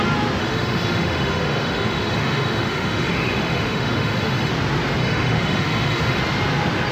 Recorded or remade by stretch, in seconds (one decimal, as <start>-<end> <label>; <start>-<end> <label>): 0.0-0.4 recorded; 0.4-4.5 remade; 4.5-5.0 recorded; 5.0-6.2 remade; 6.2-6.9 recorded

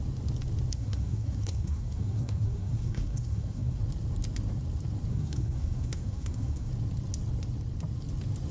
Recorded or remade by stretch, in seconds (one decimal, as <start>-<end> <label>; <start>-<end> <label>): 0.0-0.7 recorded; 0.7-3.8 remade; 3.8-5.1 recorded; 5.1-6.7 remade; 6.7-8.5 recorded

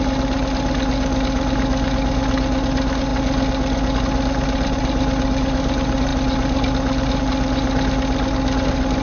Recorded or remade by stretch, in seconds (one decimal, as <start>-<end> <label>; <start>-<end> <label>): 0.0-9.0 recorded

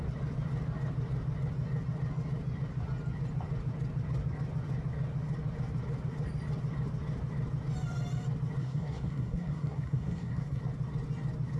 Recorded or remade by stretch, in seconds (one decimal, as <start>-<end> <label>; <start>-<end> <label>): 0.0-8.6 recorded; 8.6-10.6 remade; 10.6-11.6 recorded

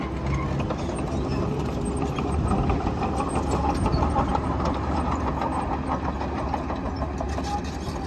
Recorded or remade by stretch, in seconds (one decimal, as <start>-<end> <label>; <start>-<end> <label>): 0.0-4.3 recorded; 4.3-5.3 remade; 5.3-8.1 recorded

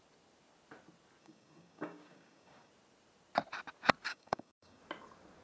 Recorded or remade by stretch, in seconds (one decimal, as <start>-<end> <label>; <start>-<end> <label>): 0.0-1.2 recorded; 1.2-2.7 remade; 2.7-4.1 recorded; 4.1-4.8 remade; 4.8-5.4 recorded

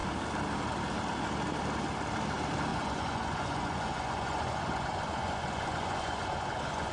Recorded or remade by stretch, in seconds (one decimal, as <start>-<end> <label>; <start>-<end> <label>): 0.0-2.7 recorded; 2.7-6.9 remade